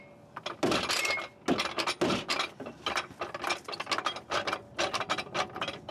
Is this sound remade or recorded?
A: recorded